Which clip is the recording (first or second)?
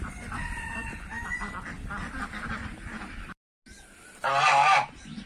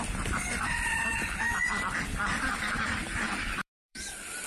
first